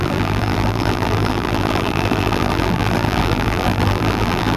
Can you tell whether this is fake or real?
fake